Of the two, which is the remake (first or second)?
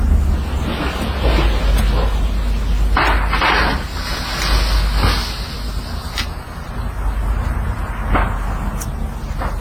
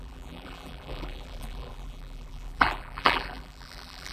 second